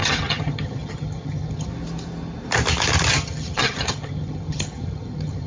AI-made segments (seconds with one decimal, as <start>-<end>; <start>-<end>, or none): 0.0-1.7; 3.1-5.5